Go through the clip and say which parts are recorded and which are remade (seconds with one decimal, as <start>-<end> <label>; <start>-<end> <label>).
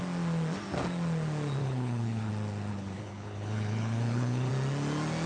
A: 0.0-1.6 recorded; 1.6-2.3 remade; 2.3-2.7 recorded; 2.7-4.5 remade; 4.5-5.3 recorded